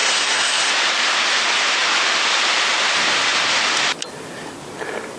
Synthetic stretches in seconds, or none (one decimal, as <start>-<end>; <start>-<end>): 0.0-0.7